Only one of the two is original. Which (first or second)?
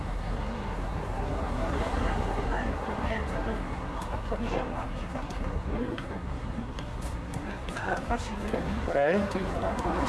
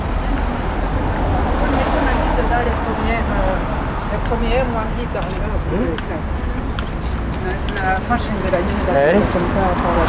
second